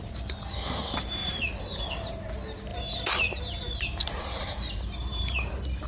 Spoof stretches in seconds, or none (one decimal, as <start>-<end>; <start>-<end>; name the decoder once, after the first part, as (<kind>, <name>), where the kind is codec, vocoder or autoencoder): 1.2-1.8 (vocoder, BigVGAN v2); 2.7-3.4; 4.0-5.5